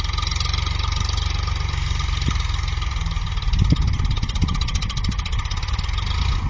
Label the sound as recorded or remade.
recorded